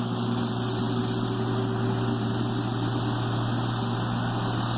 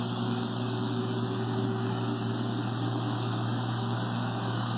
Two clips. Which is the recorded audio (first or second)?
first